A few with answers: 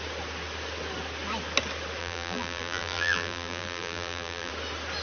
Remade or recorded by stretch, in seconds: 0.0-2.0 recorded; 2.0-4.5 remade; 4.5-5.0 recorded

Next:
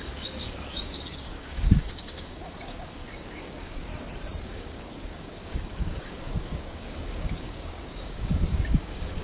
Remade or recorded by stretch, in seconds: 0.0-3.9 remade; 3.9-4.4 recorded; 4.4-9.2 remade

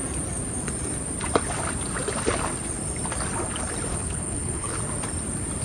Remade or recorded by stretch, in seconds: 0.0-3.9 recorded; 3.9-4.8 remade; 4.8-5.6 recorded

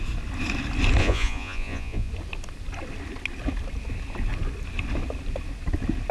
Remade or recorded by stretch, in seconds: 0.0-1.0 recorded; 1.0-2.1 remade; 2.1-6.1 recorded